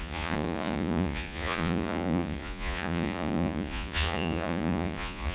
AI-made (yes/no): yes